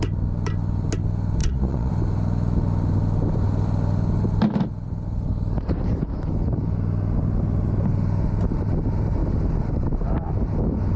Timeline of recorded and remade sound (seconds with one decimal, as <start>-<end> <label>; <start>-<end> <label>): 0.0-1.4 recorded; 1.4-1.9 remade; 1.9-11.0 recorded